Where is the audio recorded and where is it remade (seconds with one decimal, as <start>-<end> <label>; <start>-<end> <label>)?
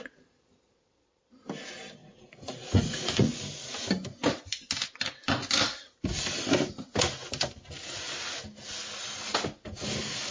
0.0-2.0 recorded; 2.0-3.3 remade; 3.3-10.3 recorded